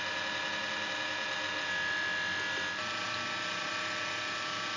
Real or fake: real